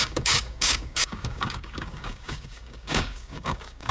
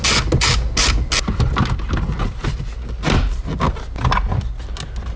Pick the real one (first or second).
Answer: second